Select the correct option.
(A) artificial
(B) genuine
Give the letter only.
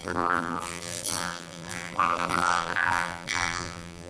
A